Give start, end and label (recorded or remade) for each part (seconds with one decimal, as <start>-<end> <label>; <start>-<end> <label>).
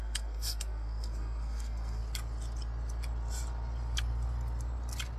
0.0-2.0 remade; 2.0-5.2 recorded